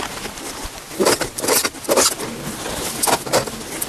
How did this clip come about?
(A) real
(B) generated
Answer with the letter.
A